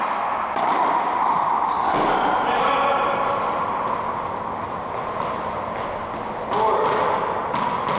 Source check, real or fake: real